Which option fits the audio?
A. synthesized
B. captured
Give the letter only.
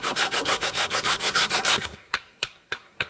A